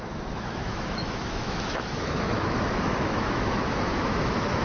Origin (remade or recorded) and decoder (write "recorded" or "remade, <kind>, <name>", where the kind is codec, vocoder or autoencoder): remade, autoencoder, DAC-VAE